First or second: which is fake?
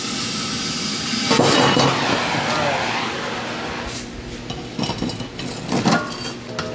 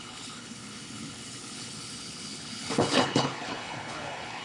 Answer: second